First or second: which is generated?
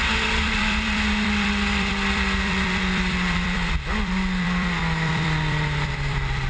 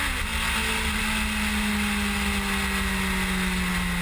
first